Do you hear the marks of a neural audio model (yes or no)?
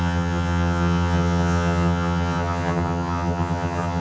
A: yes